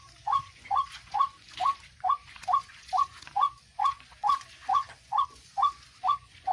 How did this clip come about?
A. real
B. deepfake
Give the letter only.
B